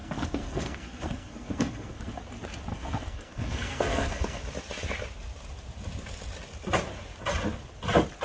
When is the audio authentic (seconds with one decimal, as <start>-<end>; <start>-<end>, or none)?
2.1-2.7; 4.4-8.2